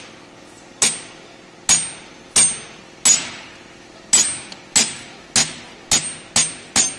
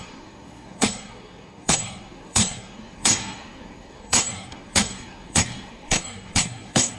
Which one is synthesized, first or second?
second